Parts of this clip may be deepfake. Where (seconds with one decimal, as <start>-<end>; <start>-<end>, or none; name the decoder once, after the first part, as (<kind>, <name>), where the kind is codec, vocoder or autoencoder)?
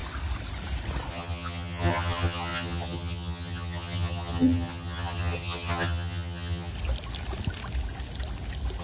1.1-6.7 (vocoder, HiFi-GAN)